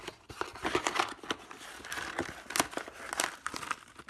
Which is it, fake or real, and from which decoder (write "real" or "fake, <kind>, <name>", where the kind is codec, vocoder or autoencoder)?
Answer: real